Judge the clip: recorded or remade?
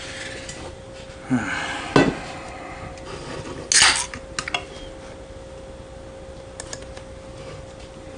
recorded